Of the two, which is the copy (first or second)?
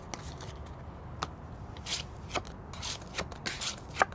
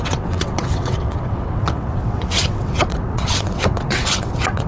second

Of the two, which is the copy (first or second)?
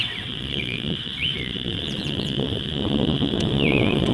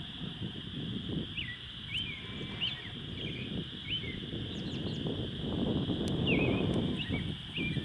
first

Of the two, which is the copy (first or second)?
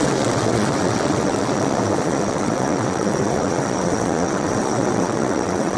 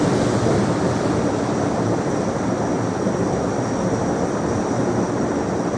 first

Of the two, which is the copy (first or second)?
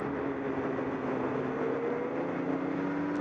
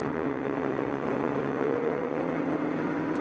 second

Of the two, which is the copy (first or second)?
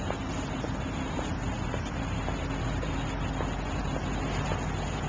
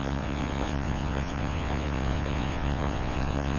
second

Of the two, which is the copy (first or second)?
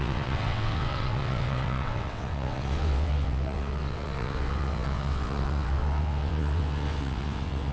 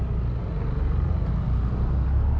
first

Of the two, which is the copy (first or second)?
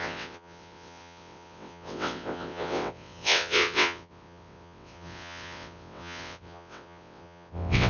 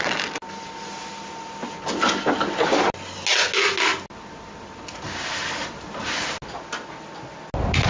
first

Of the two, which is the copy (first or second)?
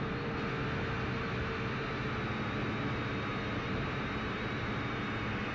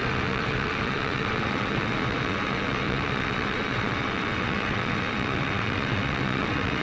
second